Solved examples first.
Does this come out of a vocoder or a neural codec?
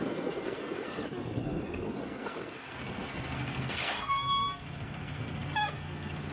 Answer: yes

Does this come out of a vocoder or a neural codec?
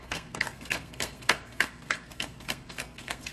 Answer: yes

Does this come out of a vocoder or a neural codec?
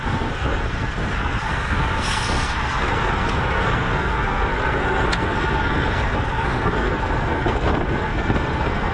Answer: yes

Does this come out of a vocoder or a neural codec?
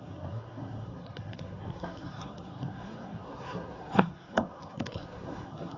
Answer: yes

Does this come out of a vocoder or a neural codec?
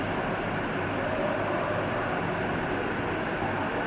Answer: no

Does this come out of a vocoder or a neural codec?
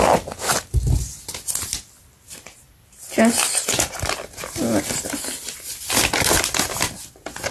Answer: no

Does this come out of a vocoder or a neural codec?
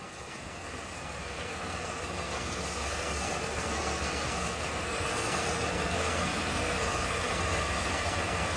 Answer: yes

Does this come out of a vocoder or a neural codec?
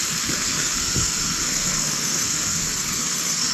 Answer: yes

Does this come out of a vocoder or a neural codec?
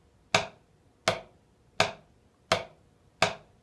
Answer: no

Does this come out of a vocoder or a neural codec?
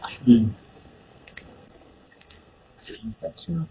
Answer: yes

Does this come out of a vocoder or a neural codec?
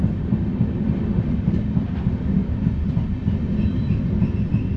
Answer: no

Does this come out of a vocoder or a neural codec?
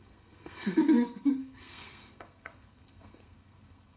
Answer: yes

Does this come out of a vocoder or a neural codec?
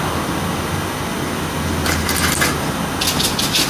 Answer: no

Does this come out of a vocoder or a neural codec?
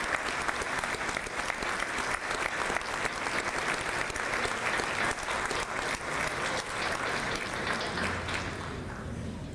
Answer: no